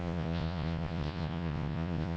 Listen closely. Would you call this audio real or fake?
fake